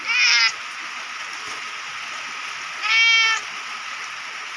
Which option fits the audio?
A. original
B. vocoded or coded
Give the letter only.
A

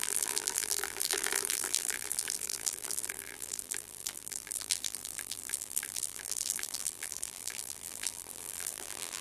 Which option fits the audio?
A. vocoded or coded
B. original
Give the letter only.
A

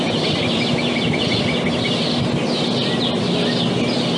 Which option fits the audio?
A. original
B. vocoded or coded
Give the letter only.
A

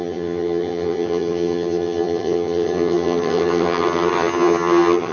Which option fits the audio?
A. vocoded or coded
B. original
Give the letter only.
A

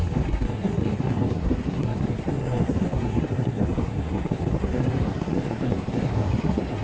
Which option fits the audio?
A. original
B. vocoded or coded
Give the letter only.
B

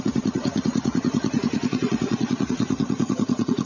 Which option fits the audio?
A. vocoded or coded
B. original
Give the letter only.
A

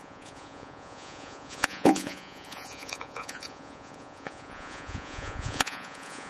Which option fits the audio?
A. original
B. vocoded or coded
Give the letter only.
B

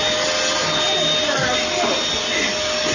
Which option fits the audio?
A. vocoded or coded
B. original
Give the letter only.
B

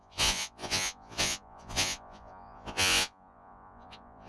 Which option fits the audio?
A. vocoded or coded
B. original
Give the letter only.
A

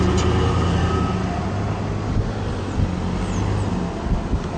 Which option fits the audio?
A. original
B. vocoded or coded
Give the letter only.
A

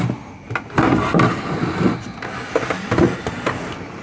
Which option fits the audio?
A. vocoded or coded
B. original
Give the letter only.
B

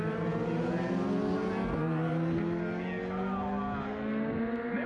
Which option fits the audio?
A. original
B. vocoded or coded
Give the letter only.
A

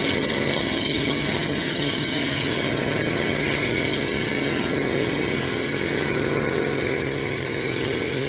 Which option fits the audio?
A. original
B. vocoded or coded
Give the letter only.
B